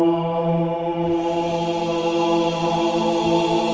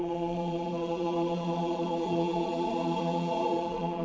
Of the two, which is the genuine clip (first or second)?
first